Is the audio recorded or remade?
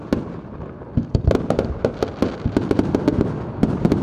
recorded